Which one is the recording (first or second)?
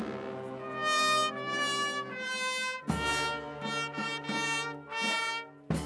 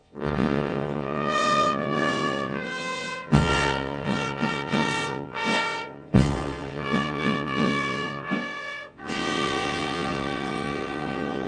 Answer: first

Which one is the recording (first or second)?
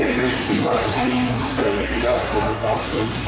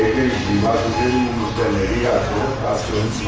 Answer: second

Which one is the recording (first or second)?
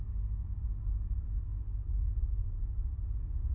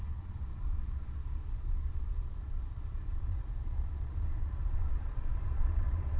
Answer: first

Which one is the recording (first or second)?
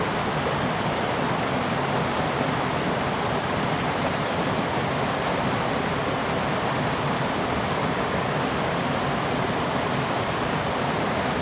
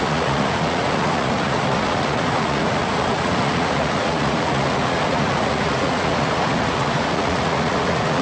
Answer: first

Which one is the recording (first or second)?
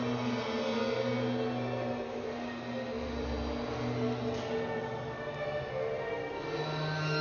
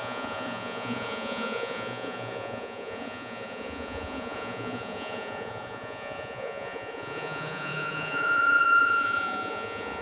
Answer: first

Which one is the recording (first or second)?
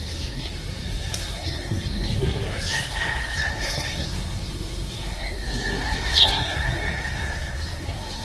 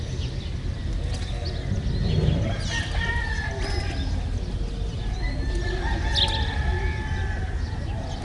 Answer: second